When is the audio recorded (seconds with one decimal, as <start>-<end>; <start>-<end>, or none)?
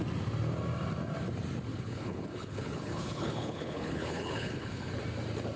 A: 0.0-1.7; 5.0-5.6